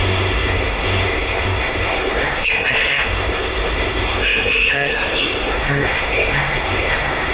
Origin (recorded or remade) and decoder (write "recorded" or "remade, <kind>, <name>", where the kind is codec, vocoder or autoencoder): remade, codec, SNAC